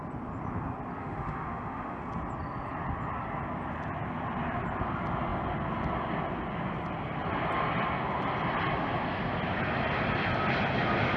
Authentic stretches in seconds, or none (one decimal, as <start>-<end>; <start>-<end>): 0.0-1.0; 2.0-11.2